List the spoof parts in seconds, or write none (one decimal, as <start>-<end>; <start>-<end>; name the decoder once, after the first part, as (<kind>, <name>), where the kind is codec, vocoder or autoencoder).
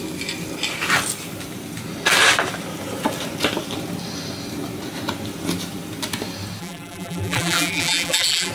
6.6-8.5 (vocoder, BigVGAN v2)